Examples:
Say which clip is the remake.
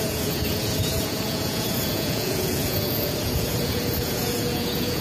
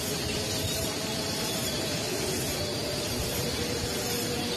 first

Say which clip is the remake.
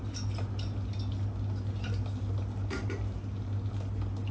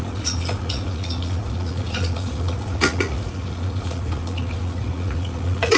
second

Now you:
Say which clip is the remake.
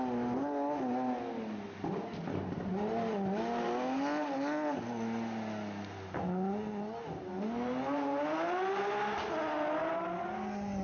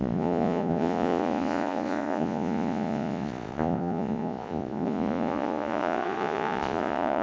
second